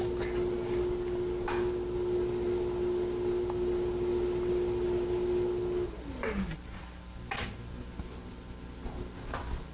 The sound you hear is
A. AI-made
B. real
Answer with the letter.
B